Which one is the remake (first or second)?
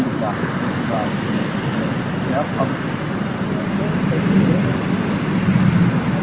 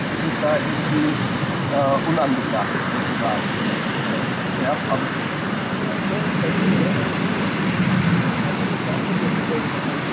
second